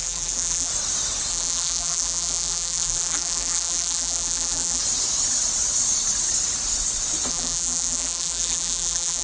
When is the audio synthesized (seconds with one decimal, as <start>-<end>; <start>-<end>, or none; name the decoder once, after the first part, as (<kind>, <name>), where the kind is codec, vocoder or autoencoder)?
0.0-0.7 (vocoder, BigVGAN v2); 1.3-4.8; 7.3-9.2